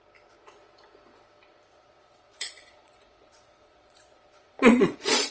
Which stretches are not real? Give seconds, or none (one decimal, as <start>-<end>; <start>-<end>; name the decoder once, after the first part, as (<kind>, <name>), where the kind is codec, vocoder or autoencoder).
1.7-5.3 (vocoder, Vocos)